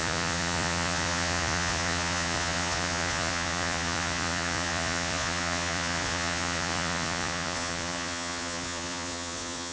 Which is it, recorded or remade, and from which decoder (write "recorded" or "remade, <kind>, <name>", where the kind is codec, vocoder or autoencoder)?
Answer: remade, vocoder, Vocos